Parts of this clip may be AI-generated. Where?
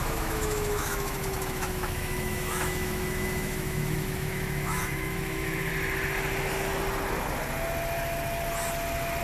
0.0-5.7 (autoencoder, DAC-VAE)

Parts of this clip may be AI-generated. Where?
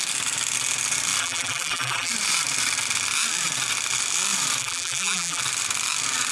1.2-2.1 (vocoder, BigVGAN v2); 4.6-5.4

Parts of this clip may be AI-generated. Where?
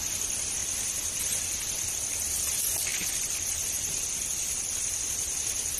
0.6-1.9 (vocoder, BigVGAN v2); 2.9-5.0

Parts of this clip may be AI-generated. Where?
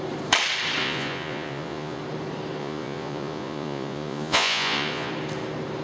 0.8-2.0 (vocoder, Vocos); 2.6-5.1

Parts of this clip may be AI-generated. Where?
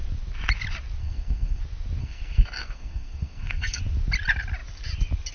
1.0-1.6 (codec, SNAC); 2.0-3.8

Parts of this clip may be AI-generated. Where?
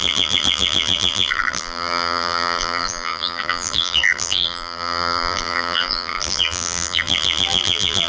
0.0-8.1 (vocoder, BigVGAN v2)